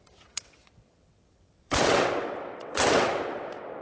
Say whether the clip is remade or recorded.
remade